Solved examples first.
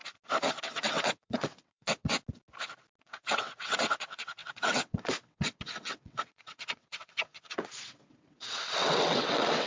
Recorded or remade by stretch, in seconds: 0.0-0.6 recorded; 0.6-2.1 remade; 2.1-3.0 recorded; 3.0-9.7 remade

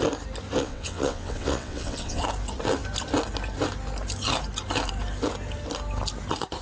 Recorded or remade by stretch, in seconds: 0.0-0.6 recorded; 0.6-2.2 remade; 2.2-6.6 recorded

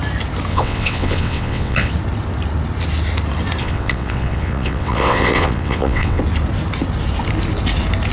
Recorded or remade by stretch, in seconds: 0.0-0.5 recorded; 0.5-1.9 remade; 1.9-3.6 recorded; 3.6-6.2 remade; 6.2-8.1 recorded